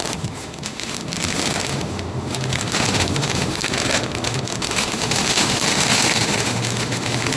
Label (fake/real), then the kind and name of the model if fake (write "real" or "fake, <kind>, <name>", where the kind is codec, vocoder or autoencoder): fake, autoencoder, DAC-VAE